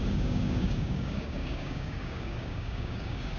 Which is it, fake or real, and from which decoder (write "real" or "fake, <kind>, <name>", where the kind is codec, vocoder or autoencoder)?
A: fake, codec, DAC